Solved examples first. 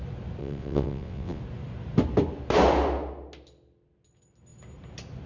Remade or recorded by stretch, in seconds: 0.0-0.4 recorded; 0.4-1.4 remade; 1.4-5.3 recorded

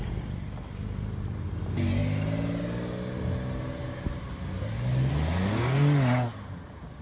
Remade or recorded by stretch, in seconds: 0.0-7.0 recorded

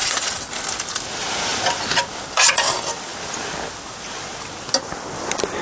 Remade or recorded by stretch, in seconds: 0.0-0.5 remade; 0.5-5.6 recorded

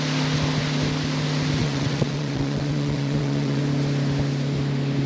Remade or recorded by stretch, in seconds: 0.0-1.6 recorded; 1.6-3.6 remade; 3.6-5.1 recorded